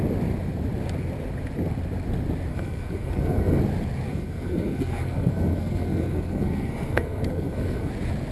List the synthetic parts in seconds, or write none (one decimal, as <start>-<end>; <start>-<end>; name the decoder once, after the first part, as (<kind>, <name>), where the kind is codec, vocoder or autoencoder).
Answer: 2.5-3.6 (codec, SNAC); 4.1-7.9